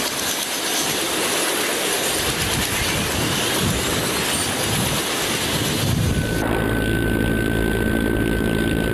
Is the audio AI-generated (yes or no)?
no